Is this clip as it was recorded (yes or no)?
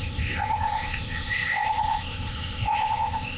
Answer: no